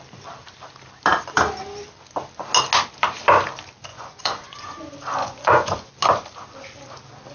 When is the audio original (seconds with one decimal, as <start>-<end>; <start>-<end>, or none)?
0.0-3.9; 4.8-5.2; 5.9-7.3